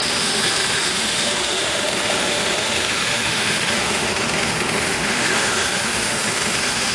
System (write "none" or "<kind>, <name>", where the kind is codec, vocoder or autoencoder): autoencoder, DAC-VAE